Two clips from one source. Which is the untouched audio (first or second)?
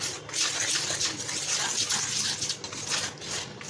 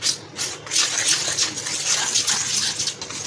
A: second